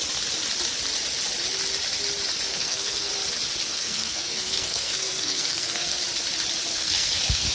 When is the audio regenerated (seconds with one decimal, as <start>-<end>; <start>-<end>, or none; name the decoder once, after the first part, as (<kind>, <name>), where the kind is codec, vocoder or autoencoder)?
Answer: 2.5-3.1 (codec, SNAC); 3.7-6.0; 6.7-7.5